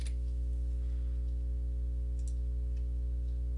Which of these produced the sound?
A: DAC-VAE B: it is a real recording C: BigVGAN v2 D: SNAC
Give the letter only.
B